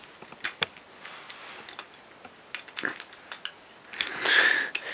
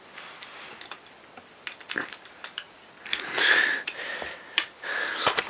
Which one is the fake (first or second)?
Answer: second